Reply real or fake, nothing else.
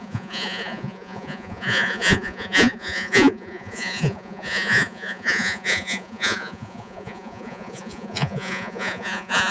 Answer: fake